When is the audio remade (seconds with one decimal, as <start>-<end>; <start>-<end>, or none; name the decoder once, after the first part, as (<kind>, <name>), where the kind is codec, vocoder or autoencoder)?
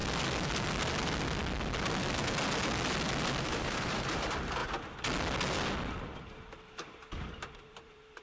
3.4-4.6 (vocoder, BigVGAN v2); 5.9-8.2